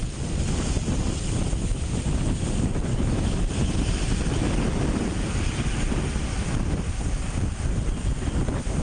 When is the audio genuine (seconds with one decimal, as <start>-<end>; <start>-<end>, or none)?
0.0-2.9; 3.4-8.8